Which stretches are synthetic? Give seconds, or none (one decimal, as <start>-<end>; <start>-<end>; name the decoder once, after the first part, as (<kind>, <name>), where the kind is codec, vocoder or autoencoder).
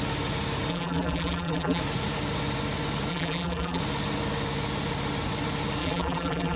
0.7-1.8 (vocoder, BigVGAN v2); 3.1-3.8; 5.8-6.6